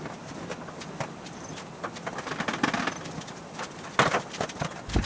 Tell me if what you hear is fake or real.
real